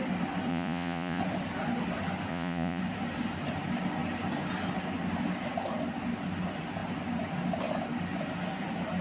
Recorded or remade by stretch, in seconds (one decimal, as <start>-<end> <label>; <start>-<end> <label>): 0.0-0.5 recorded; 0.5-1.2 remade; 1.2-2.3 recorded; 2.3-2.8 remade; 2.8-9.0 recorded